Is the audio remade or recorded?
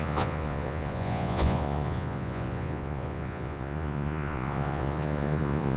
remade